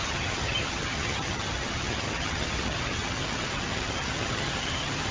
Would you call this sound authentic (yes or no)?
no